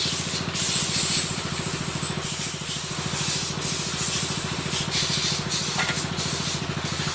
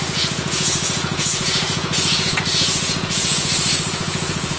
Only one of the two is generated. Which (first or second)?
second